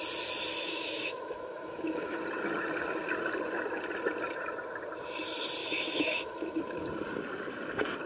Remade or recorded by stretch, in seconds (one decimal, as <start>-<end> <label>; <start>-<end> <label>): 0.0-0.5 recorded; 0.5-2.2 remade; 2.2-5.6 recorded; 5.6-6.6 remade; 6.6-8.1 recorded